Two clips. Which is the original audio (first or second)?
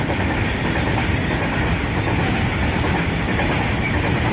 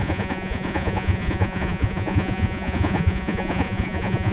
first